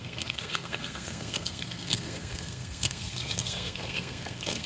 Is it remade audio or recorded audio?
remade